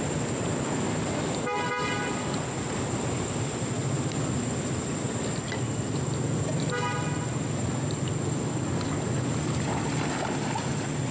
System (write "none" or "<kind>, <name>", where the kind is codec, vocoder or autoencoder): none